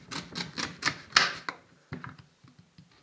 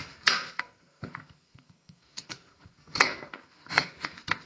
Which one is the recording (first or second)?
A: first